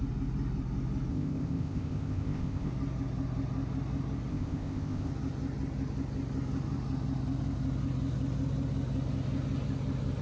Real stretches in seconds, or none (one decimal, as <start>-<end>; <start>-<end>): 0.0-1.1; 2.7-4.3; 5.1-10.2